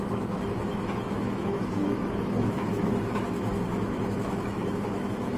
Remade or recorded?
remade